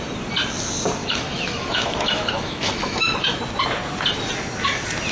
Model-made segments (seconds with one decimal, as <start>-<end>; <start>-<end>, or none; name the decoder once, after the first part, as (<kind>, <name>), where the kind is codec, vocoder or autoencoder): 1.0-3.4 (autoencoder, DAC-VAE)

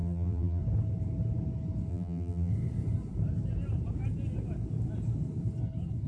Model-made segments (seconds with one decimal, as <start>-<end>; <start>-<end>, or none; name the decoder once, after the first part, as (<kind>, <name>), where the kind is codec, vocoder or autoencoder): 0.0-0.6 (vocoder, BigVGAN v2); 1.9-2.5

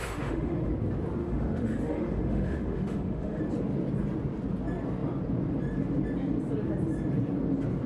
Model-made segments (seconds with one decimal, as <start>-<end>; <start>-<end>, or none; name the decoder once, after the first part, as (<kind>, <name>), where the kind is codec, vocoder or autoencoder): 0.0-0.7 (autoencoder, DAC-VAE); 1.2-3.4

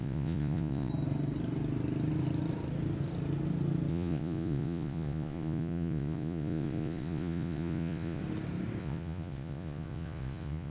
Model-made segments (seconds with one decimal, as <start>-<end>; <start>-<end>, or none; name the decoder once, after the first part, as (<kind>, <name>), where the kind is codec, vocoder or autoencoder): 0.0-0.9 (vocoder, Vocos); 3.9-8.2; 8.8-10.7

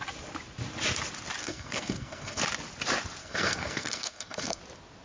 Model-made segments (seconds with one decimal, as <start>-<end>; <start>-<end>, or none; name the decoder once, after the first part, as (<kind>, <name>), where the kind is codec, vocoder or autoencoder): 1.4-2.4 (codec, SNAC); 3.2-4.6

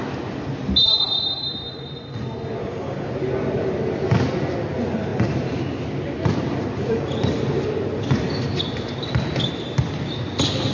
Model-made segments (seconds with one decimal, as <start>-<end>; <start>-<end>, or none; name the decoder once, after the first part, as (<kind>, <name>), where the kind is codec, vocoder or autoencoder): 2.6-3.1 (codec, DAC)